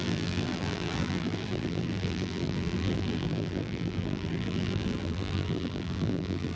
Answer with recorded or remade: remade